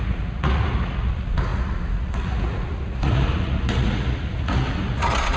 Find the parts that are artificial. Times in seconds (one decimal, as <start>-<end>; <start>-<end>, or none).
0.0-5.4